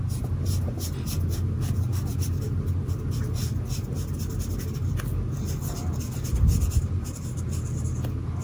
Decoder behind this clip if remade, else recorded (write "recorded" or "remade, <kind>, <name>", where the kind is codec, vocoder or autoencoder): recorded